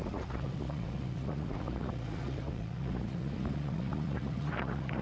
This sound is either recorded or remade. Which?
remade